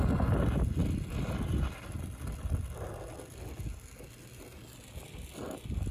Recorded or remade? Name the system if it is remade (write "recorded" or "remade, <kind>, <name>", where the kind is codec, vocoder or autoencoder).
recorded